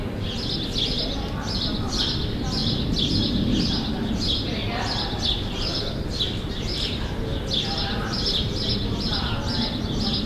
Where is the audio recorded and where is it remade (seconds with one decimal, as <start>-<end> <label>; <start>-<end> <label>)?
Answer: 0.0-10.3 recorded